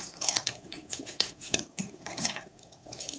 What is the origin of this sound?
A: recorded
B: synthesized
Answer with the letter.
B